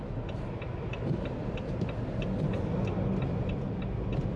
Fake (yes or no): no